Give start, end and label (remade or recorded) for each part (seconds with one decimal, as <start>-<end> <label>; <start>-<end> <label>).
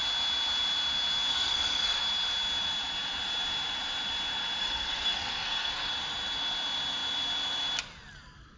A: 0.0-1.3 recorded; 1.3-2.0 remade; 2.0-4.6 recorded; 4.6-5.9 remade; 5.9-8.6 recorded